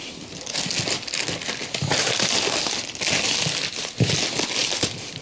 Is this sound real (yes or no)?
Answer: yes